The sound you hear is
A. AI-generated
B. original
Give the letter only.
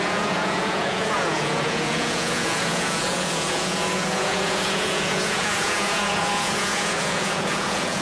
A